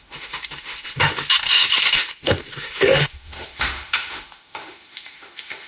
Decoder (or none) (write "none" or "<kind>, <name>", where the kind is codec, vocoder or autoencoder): autoencoder, DAC-VAE